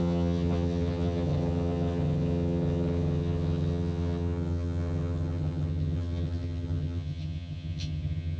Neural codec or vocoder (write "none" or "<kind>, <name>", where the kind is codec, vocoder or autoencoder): vocoder, HiFi-GAN